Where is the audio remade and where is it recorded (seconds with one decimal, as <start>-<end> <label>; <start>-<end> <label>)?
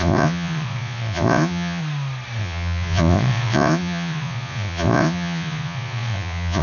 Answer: 0.0-1.8 remade; 1.8-2.4 recorded; 2.4-6.6 remade